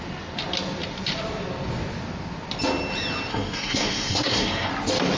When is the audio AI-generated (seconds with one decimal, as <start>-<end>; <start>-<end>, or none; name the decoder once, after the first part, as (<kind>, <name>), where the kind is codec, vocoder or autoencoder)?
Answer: 3.3-4.7 (codec, SNAC)